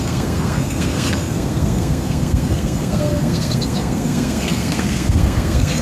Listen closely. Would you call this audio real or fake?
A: fake